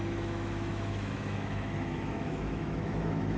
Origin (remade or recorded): remade